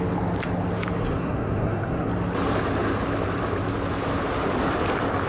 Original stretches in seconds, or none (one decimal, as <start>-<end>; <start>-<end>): 0.0-1.0; 2.1-5.3